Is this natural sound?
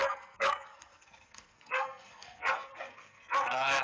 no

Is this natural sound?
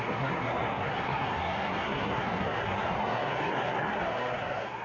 no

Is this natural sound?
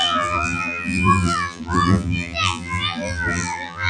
no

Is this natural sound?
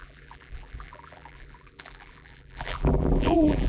no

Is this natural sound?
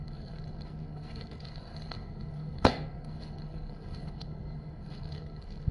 no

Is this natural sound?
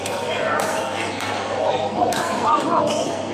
no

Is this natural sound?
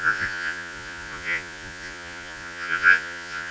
no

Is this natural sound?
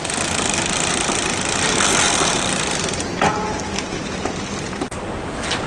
yes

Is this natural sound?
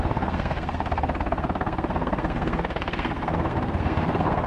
no